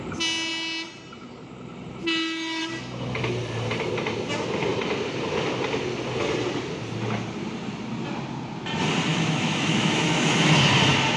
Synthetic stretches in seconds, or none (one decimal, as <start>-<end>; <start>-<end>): 9.1-10.5